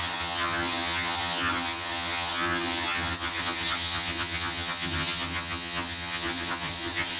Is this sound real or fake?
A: fake